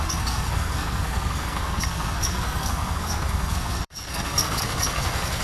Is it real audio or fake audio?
fake